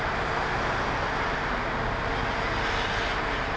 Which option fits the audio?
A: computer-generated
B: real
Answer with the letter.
B